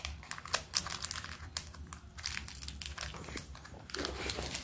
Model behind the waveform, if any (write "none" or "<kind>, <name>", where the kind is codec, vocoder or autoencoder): none